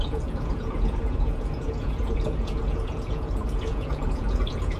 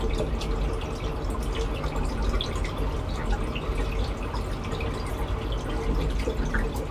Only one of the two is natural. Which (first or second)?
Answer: second